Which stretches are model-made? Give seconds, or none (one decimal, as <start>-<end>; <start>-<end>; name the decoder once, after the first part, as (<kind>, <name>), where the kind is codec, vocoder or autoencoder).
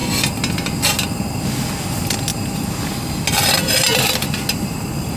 none